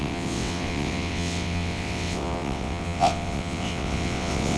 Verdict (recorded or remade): remade